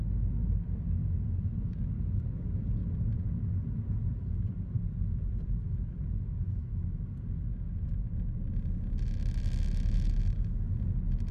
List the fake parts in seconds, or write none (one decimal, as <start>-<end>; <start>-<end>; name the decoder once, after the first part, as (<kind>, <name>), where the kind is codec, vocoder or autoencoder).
2.8-6.6 (vocoder, BigVGAN v2)